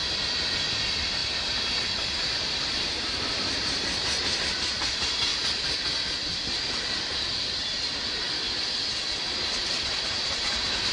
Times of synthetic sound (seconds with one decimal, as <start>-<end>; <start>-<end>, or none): 0.0-5.3; 9.2-10.9